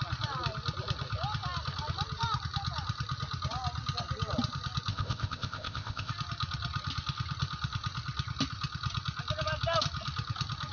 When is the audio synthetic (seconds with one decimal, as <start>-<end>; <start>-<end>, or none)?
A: 4.9-6.1